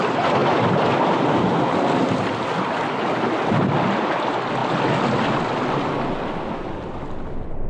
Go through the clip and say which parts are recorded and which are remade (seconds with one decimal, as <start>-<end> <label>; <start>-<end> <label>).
0.0-7.7 recorded